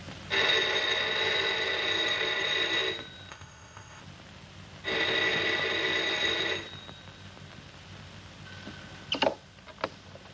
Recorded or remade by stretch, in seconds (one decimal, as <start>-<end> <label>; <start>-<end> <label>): 0.0-3.3 recorded; 3.3-4.0 remade; 4.0-10.3 recorded